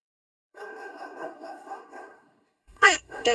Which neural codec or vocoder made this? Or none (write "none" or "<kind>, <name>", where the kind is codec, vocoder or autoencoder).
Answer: codec, SNAC